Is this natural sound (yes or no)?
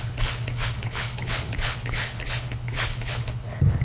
no